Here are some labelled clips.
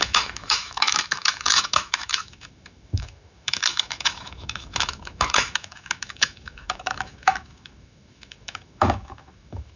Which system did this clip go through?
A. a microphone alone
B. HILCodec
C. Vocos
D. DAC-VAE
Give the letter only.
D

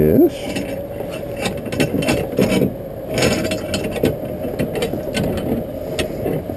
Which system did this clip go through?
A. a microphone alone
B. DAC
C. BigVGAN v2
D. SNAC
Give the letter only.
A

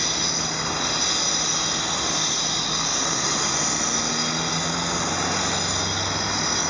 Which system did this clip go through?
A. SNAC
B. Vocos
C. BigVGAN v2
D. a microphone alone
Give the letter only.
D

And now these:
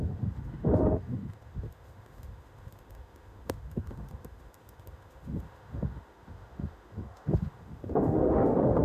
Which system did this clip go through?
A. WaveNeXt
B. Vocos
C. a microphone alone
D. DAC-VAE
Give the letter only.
D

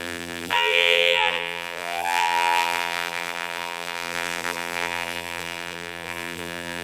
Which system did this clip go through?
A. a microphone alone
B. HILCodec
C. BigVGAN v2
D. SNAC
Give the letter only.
C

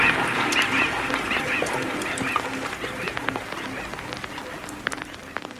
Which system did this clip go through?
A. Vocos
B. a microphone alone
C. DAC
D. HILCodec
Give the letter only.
B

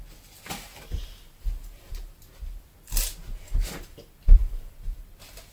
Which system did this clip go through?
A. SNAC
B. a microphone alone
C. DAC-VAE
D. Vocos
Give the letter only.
B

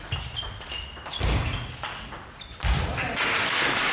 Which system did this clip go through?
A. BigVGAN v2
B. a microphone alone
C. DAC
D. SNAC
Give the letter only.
B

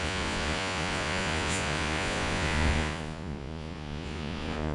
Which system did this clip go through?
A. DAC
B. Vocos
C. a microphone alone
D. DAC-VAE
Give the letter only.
B